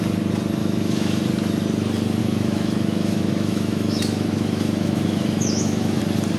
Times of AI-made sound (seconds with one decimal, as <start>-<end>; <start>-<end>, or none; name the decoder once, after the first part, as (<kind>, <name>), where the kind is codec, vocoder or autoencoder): 0.6-1.2 (autoencoder, DAC-VAE); 2.2-6.0